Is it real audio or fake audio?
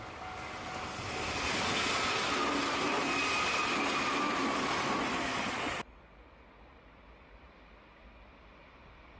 real